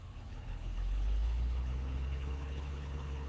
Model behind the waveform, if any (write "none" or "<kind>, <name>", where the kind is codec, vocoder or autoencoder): codec, HILCodec